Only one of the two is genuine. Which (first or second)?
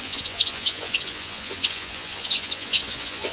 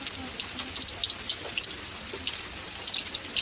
second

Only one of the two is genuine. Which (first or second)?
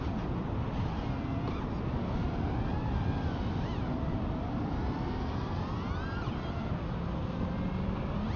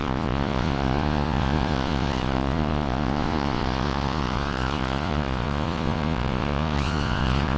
first